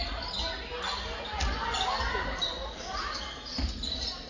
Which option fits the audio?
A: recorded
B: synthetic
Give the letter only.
A